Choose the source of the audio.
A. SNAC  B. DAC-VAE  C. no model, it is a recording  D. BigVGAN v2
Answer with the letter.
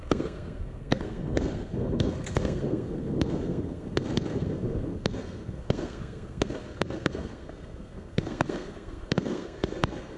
A